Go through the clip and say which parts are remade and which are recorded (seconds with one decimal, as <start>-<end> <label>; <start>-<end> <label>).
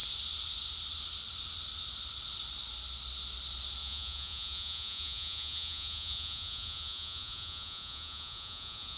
0.0-3.8 recorded; 3.8-9.0 remade